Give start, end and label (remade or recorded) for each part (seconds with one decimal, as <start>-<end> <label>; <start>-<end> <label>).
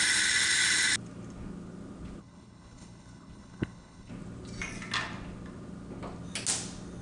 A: 0.0-2.2 recorded; 2.2-4.1 remade; 4.1-7.0 recorded